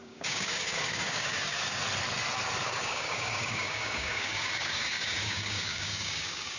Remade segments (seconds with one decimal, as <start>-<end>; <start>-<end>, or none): 0.0-1.8; 2.6-6.6